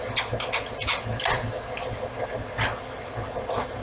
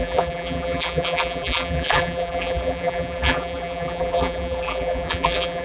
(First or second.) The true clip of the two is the first